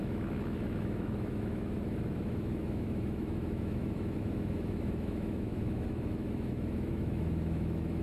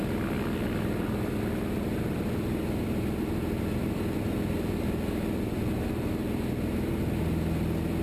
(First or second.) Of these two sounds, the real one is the second